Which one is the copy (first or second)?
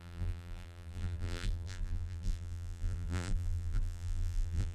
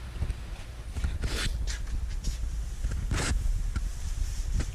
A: first